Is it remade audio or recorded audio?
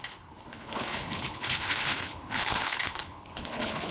remade